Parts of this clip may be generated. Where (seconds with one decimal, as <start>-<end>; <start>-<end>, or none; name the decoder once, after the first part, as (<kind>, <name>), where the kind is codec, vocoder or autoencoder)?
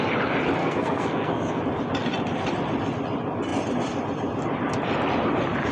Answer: 0.6-1.6 (codec, SNAC)